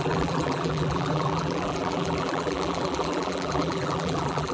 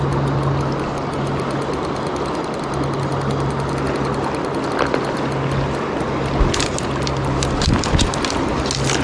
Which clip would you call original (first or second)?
second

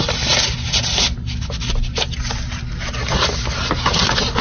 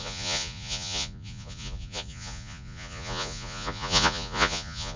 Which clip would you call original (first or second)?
first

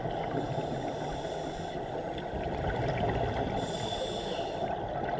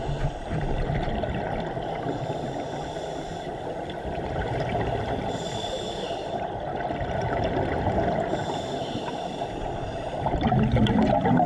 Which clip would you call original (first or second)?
first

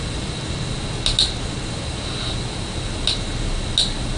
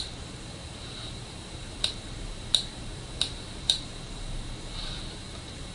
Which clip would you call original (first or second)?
first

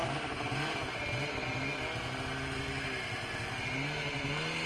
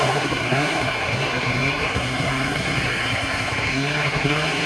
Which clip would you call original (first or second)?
first